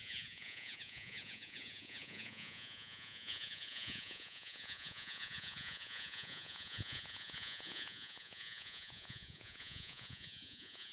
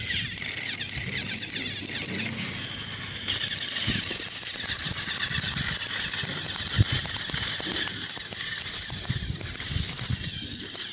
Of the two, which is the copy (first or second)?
first